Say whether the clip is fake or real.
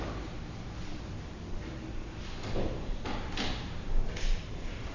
real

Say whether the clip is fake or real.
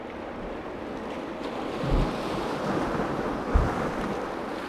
real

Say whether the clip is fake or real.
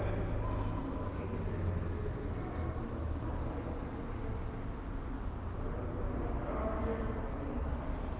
real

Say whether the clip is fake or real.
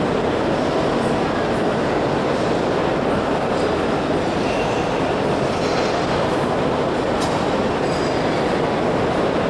real